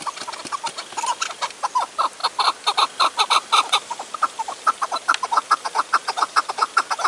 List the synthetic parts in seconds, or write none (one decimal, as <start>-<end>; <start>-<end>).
none